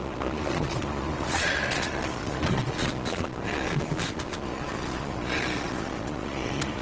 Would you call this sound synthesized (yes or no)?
yes